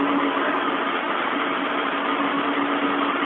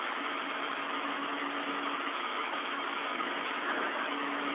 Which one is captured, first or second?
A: first